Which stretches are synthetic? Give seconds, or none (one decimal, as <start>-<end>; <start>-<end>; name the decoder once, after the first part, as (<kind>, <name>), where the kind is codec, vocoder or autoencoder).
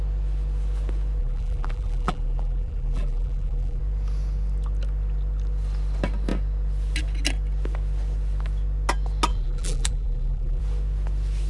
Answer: 1.2-3.8 (vocoder, BigVGAN v2); 9.3-10.6